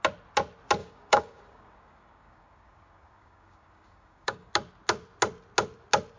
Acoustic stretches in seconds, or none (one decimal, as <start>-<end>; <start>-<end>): 0.0-0.8; 4.5-6.2